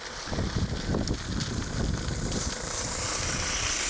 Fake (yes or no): no